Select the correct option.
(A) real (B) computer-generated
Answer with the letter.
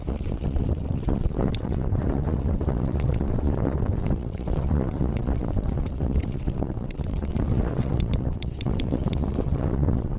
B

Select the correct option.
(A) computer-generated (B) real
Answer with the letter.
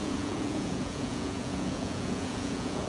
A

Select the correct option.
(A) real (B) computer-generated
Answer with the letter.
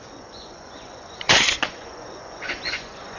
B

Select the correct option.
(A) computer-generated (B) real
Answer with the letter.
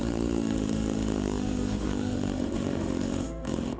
A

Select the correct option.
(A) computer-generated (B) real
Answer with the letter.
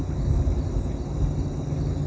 B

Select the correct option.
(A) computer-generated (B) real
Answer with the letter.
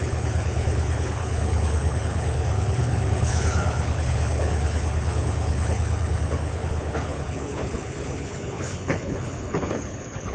A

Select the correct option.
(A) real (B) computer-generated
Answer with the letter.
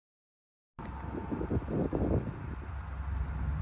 A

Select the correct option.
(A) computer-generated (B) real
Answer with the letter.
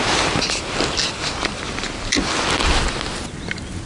B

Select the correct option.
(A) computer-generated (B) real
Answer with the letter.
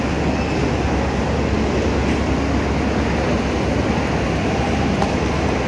B